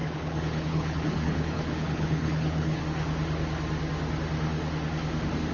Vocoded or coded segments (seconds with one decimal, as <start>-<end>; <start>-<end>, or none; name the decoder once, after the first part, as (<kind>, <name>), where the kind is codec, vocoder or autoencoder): 0.0-2.8 (codec, HILCodec)